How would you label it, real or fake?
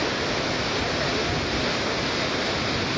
real